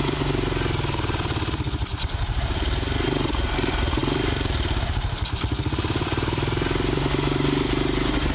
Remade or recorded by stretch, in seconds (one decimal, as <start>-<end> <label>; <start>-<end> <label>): 0.0-8.3 remade

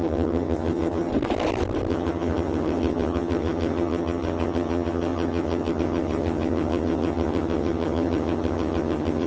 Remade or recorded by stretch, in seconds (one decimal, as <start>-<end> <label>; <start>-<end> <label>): 0.0-1.1 remade; 1.1-1.9 recorded; 1.9-9.3 remade

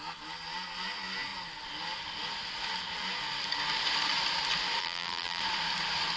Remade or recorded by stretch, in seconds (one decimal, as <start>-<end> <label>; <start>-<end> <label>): 0.0-4.8 recorded; 4.8-5.4 remade; 5.4-6.2 recorded